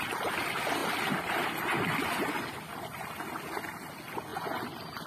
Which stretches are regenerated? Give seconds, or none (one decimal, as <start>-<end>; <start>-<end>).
none